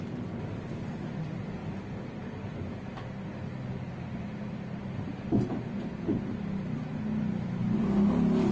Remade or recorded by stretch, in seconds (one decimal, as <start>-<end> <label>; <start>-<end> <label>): 0.0-8.5 recorded